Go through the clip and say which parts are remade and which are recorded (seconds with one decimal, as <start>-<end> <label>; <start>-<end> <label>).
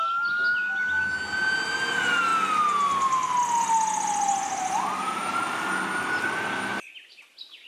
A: 0.0-7.7 recorded